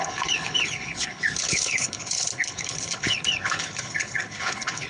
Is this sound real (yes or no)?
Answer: no